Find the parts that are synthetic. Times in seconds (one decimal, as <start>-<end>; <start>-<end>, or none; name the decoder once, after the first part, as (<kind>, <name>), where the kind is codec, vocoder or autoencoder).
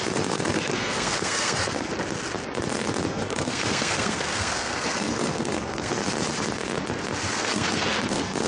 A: 0.0-1.9 (codec, SNAC); 3.1-6.0; 7.3-8.5